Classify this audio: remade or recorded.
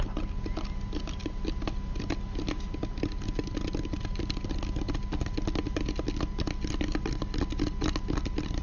recorded